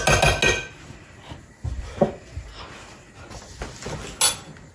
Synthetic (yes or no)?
no